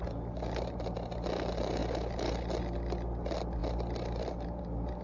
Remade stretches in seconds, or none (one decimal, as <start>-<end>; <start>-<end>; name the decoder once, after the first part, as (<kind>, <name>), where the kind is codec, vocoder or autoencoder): none